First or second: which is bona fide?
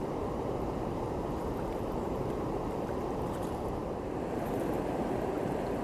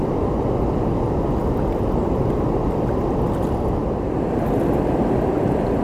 second